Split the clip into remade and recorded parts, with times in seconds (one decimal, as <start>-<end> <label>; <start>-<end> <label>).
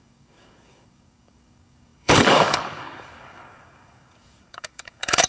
0.0-5.3 remade